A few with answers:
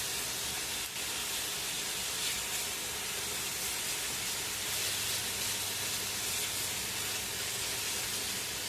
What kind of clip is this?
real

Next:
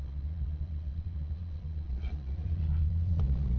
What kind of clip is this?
fake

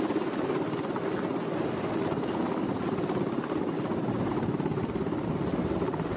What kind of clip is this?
real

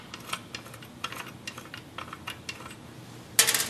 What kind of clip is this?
real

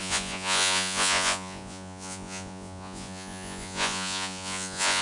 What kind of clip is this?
fake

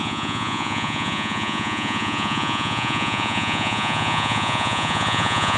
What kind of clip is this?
fake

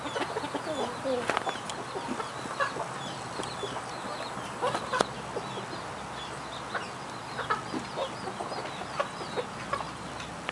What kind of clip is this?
real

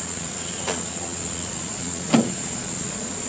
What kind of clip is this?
fake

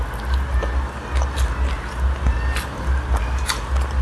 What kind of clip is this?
real